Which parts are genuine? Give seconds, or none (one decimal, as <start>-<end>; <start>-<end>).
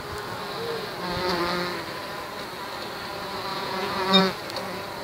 0.0-3.5; 4.2-5.0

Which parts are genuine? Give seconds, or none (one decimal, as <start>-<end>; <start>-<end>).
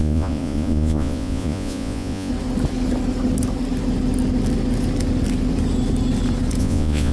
2.3-6.6